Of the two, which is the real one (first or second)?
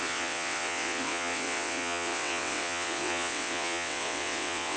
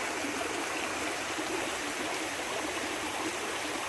second